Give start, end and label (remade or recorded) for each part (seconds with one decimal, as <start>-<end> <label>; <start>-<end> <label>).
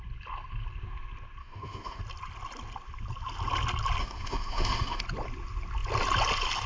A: 0.0-1.4 recorded; 1.4-2.0 remade; 2.0-4.0 recorded; 4.0-5.0 remade; 5.0-6.7 recorded